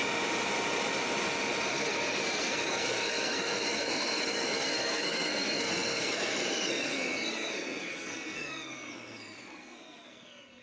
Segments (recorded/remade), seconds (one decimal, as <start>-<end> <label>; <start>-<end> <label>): 0.0-1.7 recorded; 1.7-10.6 remade